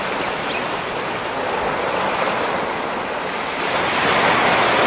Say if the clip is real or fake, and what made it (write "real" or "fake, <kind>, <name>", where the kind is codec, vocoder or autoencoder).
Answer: real